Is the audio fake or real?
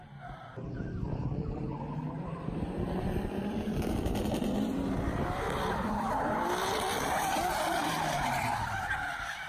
fake